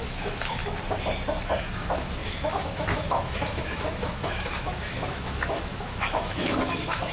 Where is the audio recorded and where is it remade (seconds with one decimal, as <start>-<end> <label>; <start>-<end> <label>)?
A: 0.0-0.6 remade; 0.6-1.6 recorded; 1.6-7.1 remade